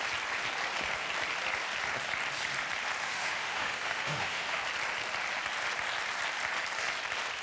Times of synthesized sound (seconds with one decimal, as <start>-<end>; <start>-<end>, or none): 3.0-4.6